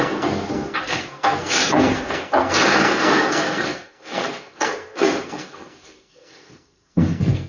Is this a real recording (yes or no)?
no